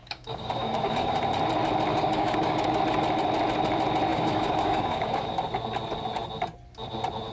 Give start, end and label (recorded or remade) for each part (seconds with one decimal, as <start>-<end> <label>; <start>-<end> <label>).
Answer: 0.0-1.2 remade; 1.2-1.9 recorded; 1.9-2.8 remade; 2.8-4.1 recorded; 4.1-5.3 remade; 5.3-7.3 recorded